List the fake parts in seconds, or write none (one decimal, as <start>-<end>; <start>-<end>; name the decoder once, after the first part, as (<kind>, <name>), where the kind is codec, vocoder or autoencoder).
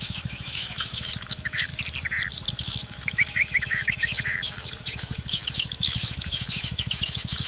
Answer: 0.0-1.7 (autoencoder, DAC-VAE); 2.5-7.5